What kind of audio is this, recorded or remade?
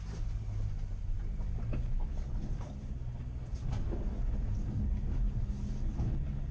recorded